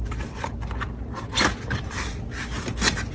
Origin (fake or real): real